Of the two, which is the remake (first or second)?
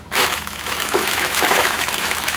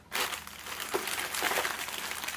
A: first